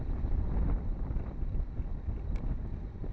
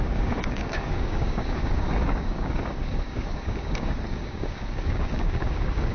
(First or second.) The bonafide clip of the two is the first